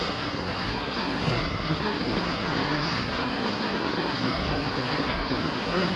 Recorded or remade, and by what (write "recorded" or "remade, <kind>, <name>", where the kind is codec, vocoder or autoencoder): remade, codec, SNAC